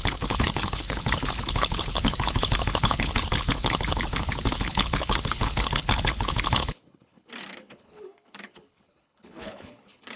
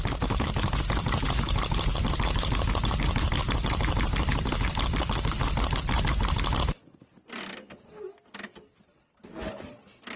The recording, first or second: second